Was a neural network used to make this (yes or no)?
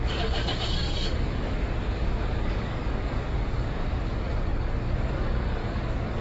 yes